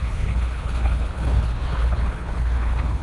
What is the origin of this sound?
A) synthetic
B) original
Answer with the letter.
A